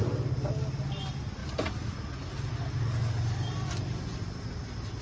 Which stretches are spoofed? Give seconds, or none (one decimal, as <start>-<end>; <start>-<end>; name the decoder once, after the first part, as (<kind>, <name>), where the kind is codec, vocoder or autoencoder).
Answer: none